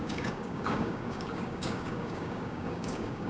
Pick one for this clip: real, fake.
fake